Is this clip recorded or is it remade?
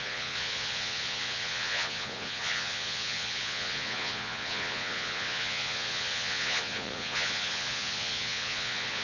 remade